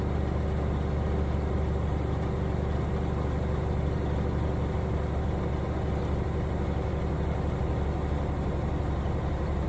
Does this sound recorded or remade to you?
recorded